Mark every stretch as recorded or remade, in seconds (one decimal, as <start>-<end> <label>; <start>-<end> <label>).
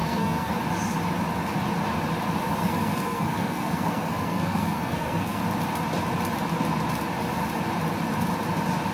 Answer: 0.0-0.6 remade; 0.6-2.6 recorded; 2.6-5.4 remade; 5.4-8.9 recorded